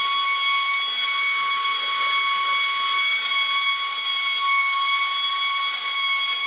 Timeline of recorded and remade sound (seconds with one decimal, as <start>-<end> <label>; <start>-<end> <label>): 0.0-6.5 recorded